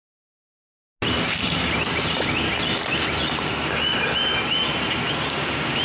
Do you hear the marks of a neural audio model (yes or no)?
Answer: no